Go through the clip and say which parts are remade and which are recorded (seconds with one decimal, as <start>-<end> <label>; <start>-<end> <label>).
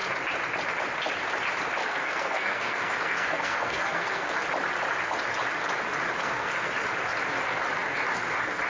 0.0-1.8 recorded; 1.8-4.3 remade; 4.3-6.2 recorded; 6.2-6.7 remade; 6.7-8.7 recorded